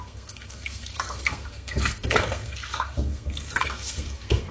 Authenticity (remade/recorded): remade